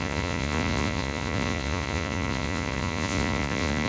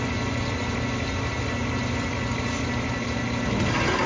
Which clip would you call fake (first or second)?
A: first